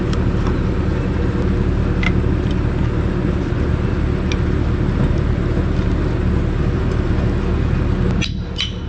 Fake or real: real